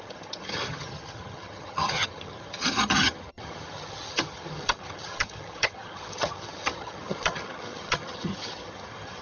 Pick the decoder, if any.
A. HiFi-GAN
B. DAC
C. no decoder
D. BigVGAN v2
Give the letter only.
A